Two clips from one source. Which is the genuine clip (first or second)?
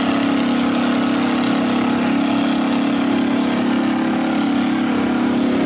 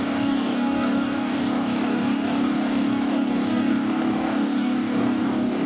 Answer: first